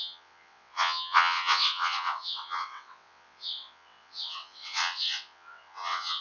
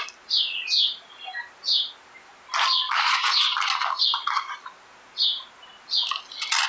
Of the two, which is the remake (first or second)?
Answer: first